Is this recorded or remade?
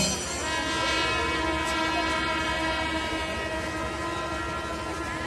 recorded